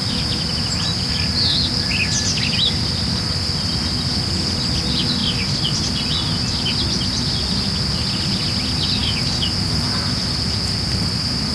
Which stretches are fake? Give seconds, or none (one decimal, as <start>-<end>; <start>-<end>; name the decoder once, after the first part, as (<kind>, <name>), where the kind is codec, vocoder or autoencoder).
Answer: none